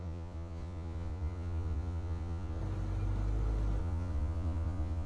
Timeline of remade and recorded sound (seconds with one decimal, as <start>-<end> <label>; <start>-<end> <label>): 0.0-2.6 remade; 2.6-3.8 recorded; 3.8-5.1 remade